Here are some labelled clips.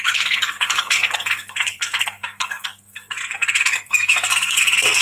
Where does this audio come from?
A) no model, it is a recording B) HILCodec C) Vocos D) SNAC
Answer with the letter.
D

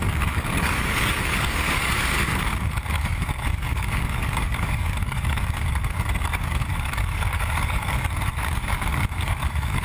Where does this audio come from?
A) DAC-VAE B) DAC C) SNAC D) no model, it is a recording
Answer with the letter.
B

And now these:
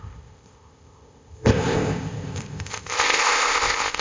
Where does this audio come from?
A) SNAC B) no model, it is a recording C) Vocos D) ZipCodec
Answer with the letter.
D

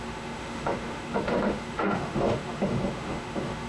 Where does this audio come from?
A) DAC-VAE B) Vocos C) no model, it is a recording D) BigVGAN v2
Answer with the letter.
A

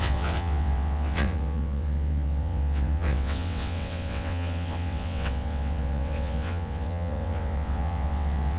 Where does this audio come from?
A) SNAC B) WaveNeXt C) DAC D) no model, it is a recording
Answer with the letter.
B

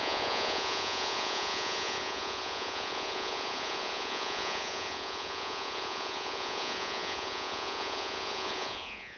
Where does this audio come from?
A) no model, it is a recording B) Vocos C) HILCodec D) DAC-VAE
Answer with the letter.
B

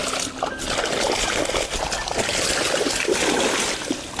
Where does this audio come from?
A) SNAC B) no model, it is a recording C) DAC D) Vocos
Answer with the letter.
B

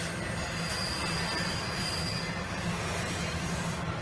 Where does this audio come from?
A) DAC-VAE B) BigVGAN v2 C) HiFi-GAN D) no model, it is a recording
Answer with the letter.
D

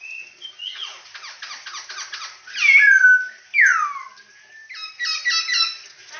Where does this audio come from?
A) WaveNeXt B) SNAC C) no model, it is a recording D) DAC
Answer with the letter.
C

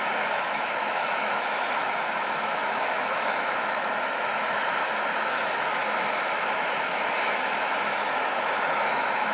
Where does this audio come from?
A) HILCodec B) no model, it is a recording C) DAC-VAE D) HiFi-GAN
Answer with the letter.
C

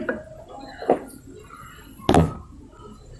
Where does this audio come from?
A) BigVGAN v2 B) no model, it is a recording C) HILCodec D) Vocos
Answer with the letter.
B